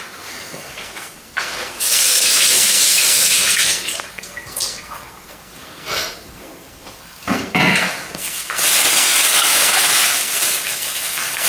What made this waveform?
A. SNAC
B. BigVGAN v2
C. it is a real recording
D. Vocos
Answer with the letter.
A